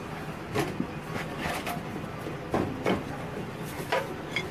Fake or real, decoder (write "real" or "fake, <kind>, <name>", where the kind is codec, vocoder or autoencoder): real